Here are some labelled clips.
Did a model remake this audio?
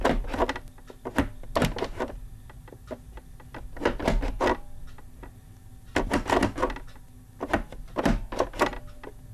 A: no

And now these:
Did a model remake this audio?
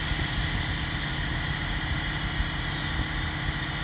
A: no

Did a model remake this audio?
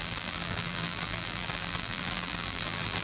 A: yes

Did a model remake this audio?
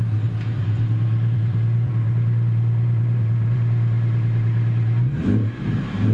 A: yes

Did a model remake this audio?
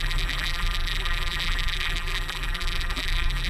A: yes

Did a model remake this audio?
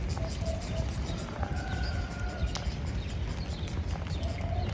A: no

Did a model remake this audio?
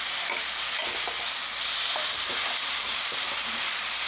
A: yes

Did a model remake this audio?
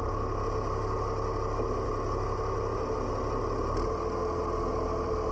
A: no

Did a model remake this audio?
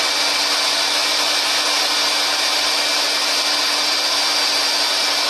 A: no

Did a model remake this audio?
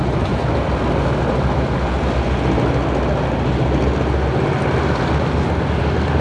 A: no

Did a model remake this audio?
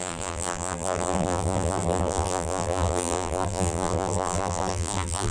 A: yes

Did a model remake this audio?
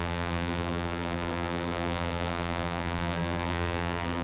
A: yes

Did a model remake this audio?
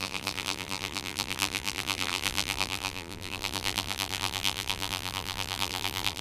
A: yes